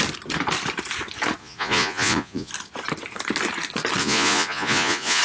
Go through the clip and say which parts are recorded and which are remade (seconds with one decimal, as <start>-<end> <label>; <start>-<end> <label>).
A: 0.0-1.4 recorded; 1.4-2.5 remade; 2.5-4.0 recorded; 4.0-5.2 remade